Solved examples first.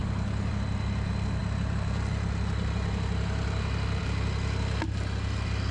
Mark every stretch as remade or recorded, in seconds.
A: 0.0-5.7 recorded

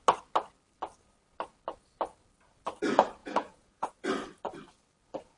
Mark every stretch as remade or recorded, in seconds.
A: 0.0-3.2 recorded; 3.2-3.9 remade; 3.9-5.4 recorded

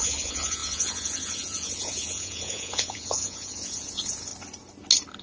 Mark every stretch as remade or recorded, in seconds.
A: 0.0-4.3 remade; 4.3-5.2 recorded

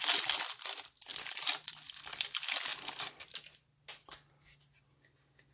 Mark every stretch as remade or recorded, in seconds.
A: 0.0-5.5 recorded